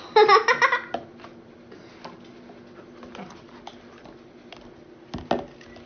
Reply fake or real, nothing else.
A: real